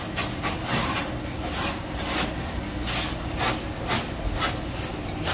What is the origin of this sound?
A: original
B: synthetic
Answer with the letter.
A